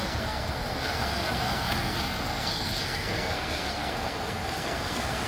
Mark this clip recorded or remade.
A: remade